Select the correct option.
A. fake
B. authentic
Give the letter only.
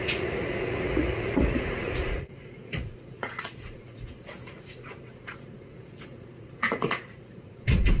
A